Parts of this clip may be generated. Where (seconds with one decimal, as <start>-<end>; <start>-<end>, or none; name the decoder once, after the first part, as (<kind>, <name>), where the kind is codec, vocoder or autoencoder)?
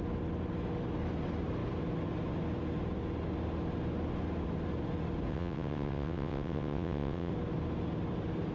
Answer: 5.3-7.3 (vocoder, WaveNeXt)